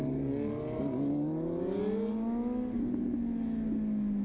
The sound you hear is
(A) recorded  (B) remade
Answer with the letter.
A